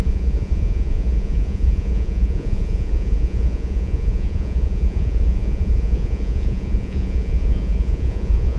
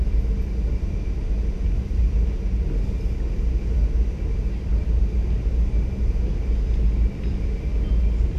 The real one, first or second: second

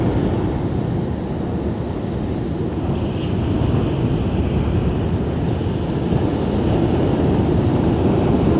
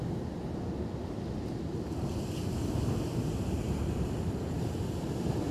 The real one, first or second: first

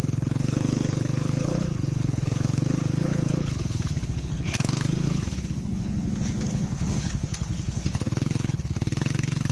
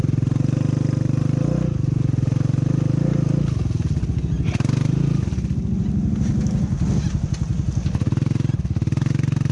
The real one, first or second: second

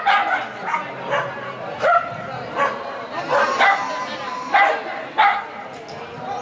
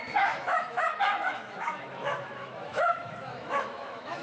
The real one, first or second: first